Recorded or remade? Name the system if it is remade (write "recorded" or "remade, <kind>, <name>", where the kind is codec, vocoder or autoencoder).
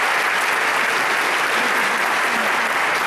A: recorded